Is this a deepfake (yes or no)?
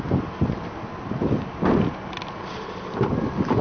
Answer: no